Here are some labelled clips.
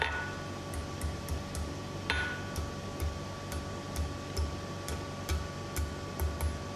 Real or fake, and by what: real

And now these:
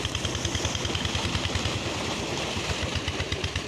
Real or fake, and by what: real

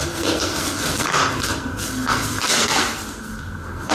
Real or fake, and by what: fake, codec, SNAC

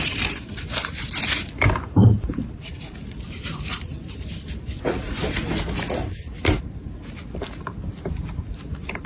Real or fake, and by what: fake, vocoder, BigVGAN v2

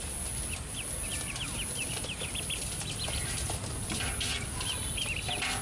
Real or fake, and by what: real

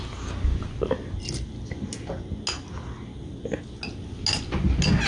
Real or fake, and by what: real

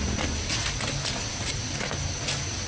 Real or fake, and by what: real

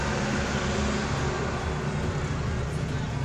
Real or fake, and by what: real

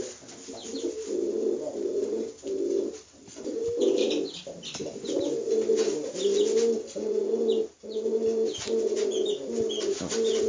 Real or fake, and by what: real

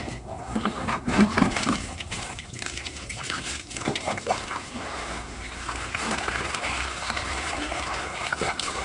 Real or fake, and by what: fake, codec, SNAC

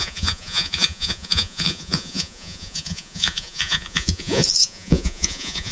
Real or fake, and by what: fake, vocoder, Vocos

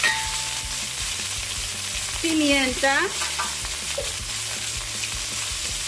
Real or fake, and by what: real